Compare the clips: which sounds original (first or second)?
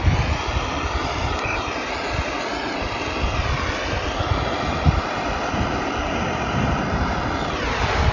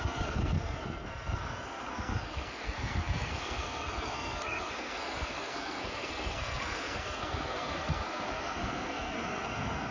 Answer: first